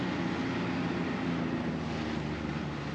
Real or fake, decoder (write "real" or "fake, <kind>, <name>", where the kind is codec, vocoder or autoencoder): real